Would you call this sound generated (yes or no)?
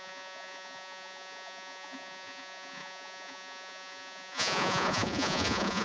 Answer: yes